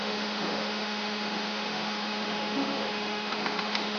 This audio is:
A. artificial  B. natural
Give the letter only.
A